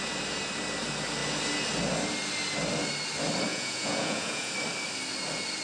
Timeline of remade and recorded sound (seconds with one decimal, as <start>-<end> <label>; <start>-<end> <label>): 0.0-3.5 recorded; 3.5-4.5 remade; 4.5-5.6 recorded